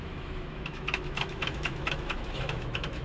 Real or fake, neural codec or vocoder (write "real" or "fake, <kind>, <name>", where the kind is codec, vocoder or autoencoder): fake, autoencoder, DAC-VAE